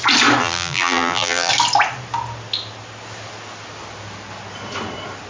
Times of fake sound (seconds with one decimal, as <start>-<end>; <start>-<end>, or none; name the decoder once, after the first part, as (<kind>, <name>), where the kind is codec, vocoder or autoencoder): 0.4-1.5 (vocoder, BigVGAN v2)